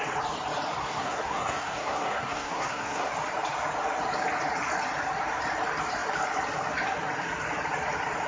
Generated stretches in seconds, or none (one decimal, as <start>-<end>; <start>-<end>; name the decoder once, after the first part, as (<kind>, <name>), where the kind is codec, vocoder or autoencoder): 0.8-3.1 (codec, SNAC)

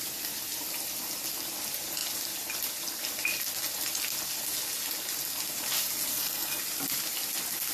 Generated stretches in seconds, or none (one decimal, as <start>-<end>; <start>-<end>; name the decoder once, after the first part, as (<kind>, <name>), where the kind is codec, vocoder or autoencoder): 6.1-6.6 (codec, SNAC)

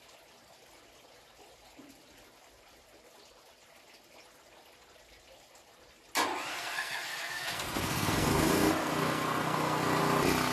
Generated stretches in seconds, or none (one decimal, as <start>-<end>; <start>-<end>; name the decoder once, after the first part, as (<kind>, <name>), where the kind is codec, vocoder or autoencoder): 6.5-10.0 (codec, SNAC)

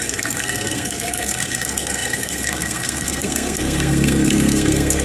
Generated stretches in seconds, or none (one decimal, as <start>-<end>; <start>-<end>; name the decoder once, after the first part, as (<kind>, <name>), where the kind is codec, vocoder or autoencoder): 0.0-5.0 (codec, SNAC)

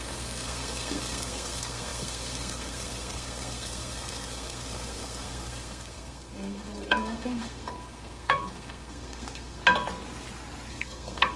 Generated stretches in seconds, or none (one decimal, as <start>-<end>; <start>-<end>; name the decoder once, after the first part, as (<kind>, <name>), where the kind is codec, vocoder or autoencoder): 0.0-9.6 (codec, SNAC); 10.7-11.4